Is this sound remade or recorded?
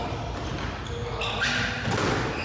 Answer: recorded